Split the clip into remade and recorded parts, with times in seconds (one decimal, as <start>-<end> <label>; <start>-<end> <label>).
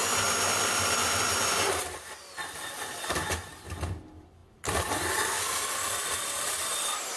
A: 0.0-0.6 recorded; 0.6-7.2 remade